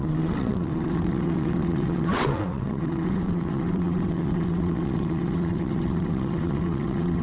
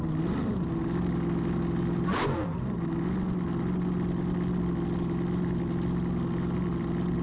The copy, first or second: first